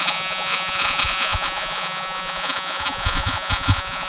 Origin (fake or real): fake